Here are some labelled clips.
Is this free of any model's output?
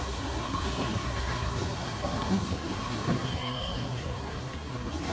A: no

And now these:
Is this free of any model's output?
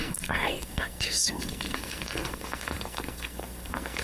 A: no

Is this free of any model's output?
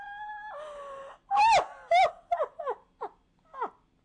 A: yes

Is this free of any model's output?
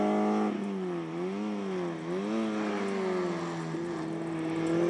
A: yes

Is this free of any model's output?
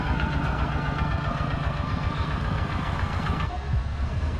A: no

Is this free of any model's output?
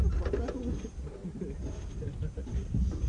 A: yes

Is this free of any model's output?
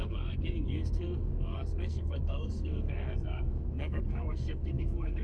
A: no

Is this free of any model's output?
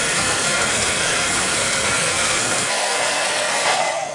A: no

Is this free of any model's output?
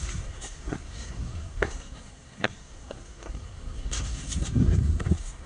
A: no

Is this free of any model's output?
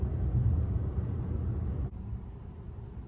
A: yes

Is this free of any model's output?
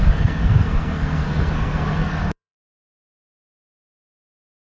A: no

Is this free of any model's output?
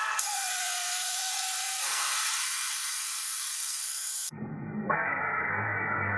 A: no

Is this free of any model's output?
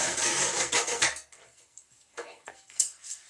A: no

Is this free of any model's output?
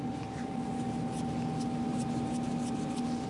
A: yes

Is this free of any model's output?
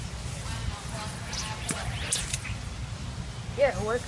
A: yes